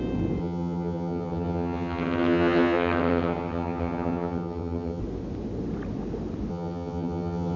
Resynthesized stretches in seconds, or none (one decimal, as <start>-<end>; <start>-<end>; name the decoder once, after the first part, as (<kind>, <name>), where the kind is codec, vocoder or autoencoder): 0.4-5.0 (vocoder, HiFi-GAN); 6.5-7.6

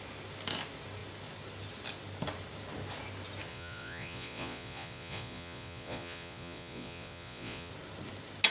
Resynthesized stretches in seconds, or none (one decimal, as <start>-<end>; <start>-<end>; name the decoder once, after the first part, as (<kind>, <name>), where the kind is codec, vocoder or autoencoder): 3.5-7.7 (vocoder, Vocos)

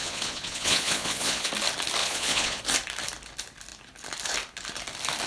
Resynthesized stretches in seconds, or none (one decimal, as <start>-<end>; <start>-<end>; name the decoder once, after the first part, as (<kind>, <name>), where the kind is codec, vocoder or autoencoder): 0.0-1.5 (vocoder, Vocos); 2.0-2.6

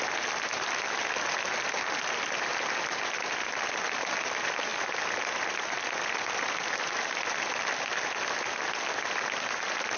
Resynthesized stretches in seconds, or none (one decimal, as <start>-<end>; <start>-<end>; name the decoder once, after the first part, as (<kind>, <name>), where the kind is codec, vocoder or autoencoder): none

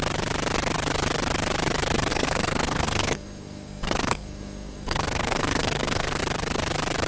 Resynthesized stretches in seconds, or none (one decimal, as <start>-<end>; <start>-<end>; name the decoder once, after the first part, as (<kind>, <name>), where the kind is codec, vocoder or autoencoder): 2.1-6.2 (codec, SNAC)